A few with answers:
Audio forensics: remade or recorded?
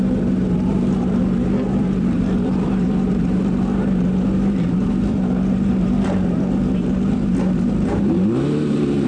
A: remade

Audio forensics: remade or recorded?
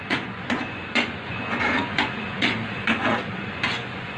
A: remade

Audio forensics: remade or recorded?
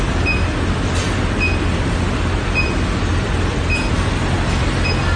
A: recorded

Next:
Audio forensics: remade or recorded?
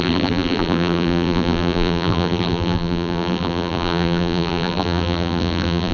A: remade